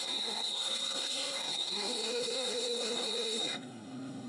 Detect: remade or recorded remade